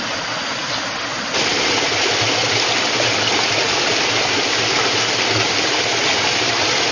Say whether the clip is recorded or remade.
recorded